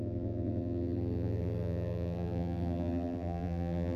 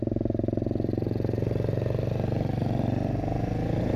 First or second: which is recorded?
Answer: second